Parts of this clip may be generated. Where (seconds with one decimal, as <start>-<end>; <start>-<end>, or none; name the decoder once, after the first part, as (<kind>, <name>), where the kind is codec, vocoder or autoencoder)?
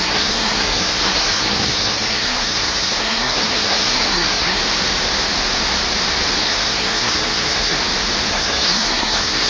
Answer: 0.0-4.6 (codec, SNAC); 6.4-7.8; 8.3-9.5